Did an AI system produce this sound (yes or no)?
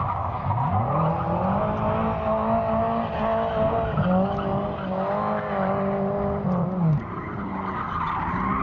no